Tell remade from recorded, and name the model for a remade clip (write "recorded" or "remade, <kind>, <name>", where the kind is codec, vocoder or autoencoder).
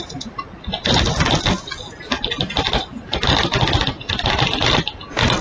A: recorded